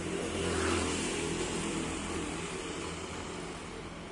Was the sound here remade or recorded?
remade